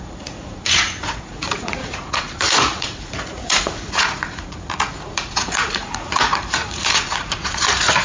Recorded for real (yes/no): no